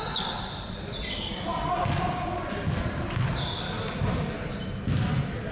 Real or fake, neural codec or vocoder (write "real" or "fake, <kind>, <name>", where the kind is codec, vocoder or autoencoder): real